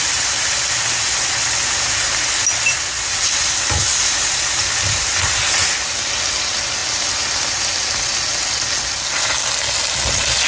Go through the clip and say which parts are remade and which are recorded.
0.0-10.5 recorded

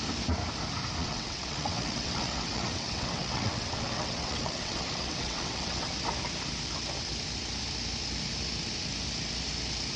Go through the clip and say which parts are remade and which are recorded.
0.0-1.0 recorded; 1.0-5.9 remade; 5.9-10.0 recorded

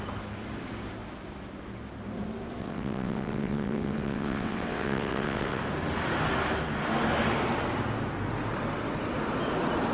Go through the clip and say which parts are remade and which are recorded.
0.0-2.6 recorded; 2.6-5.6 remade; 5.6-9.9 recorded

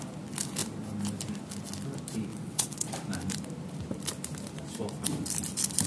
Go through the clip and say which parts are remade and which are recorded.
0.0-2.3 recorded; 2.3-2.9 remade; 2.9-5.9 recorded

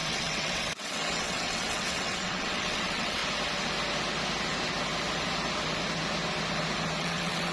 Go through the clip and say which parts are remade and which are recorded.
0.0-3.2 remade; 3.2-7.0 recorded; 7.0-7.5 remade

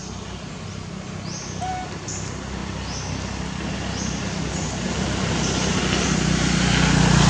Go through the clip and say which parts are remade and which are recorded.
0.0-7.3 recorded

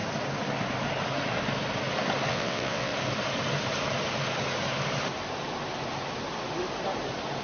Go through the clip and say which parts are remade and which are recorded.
0.0-2.3 recorded; 2.3-2.9 remade; 2.9-7.4 recorded